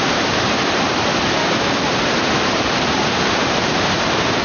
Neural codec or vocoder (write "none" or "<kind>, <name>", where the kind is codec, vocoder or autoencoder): vocoder, BigVGAN v2